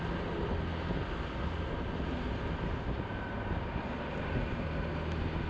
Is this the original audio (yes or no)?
yes